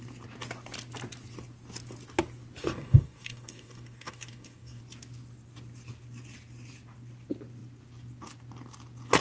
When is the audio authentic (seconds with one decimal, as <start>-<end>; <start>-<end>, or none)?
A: 0.0-2.6; 4.8-9.2